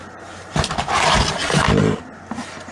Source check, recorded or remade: recorded